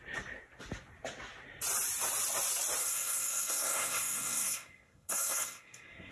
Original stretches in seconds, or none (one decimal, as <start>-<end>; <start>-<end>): 0.0-2.8